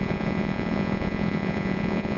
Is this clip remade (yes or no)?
yes